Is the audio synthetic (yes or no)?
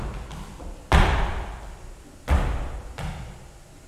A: no